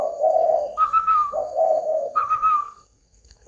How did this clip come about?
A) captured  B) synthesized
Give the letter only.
B